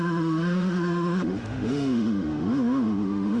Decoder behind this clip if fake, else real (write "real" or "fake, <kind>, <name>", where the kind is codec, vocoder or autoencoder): fake, autoencoder, DAC-VAE